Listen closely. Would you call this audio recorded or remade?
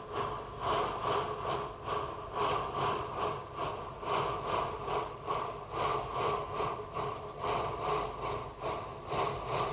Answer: recorded